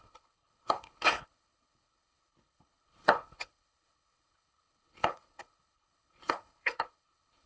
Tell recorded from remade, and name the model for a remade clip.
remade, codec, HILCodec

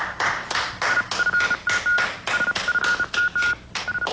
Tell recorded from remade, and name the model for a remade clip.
recorded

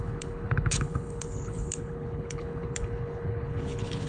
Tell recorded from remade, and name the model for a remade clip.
remade, codec, HILCodec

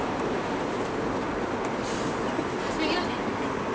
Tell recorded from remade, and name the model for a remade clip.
recorded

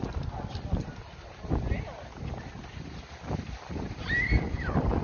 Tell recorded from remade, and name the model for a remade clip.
recorded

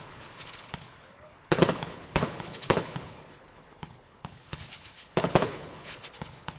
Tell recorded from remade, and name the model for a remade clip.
remade, codec, HILCodec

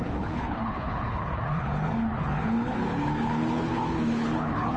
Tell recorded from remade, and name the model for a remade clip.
remade, codec, HILCodec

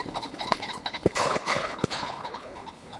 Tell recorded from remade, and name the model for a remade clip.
remade, codec, HILCodec